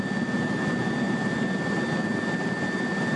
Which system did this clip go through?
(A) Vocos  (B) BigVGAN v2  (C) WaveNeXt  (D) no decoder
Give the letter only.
D